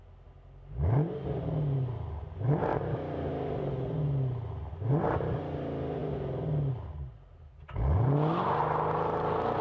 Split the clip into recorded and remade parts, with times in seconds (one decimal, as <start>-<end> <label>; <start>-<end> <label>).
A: 0.0-9.6 recorded